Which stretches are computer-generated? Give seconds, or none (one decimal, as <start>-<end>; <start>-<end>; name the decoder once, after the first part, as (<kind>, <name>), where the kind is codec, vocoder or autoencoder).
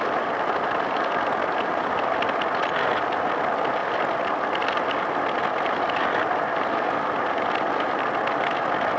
none